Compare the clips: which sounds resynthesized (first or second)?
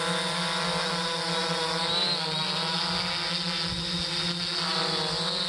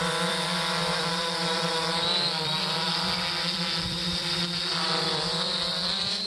second